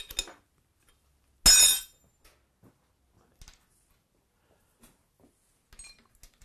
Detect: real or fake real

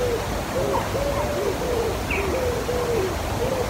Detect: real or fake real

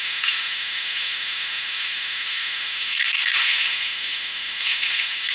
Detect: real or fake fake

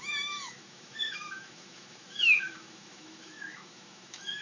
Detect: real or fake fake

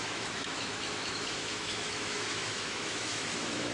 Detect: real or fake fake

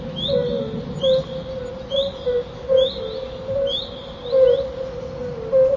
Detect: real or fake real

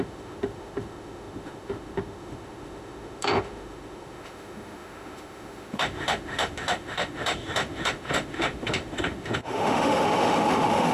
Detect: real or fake fake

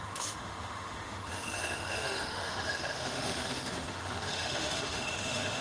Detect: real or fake fake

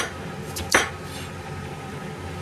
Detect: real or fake real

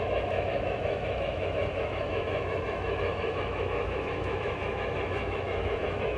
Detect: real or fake fake